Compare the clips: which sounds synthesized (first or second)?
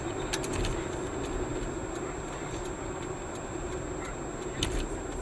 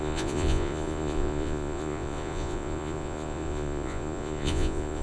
second